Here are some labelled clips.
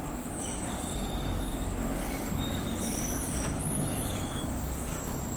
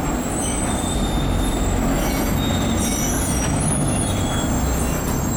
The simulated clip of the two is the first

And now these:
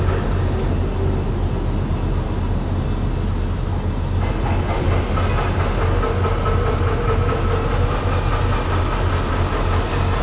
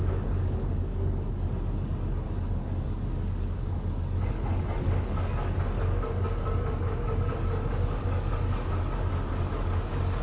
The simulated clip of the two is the second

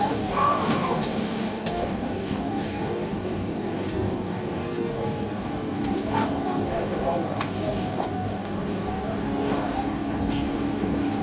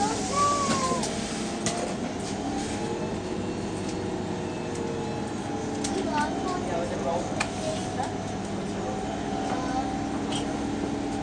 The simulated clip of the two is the first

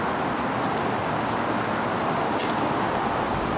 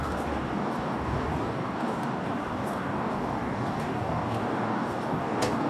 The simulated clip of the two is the second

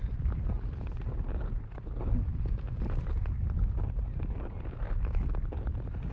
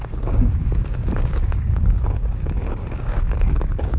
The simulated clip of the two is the second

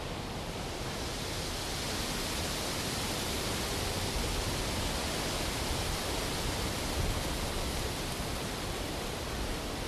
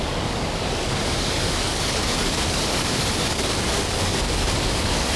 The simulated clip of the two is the second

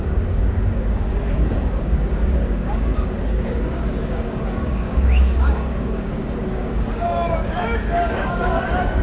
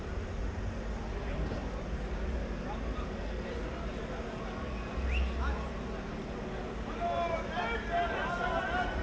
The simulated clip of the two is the first